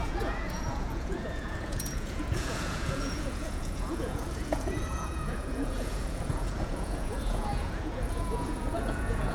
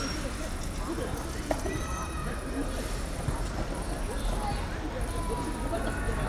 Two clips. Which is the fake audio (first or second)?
first